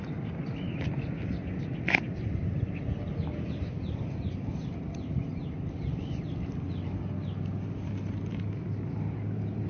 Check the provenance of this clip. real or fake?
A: real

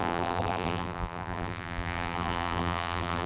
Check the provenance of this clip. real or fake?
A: fake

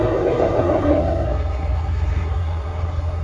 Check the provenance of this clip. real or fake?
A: fake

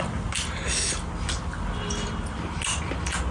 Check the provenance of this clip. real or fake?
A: real